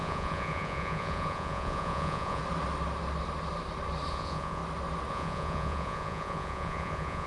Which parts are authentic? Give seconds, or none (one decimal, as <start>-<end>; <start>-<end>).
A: 2.4-4.1; 4.6-5.1